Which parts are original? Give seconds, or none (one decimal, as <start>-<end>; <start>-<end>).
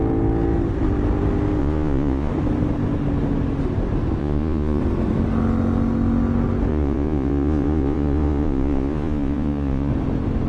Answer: 0.0-1.6; 2.3-4.2; 4.8-6.7; 9.9-10.5